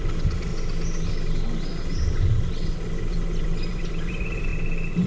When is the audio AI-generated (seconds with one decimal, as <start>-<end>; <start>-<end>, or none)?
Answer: 0.0-0.5; 3.1-4.5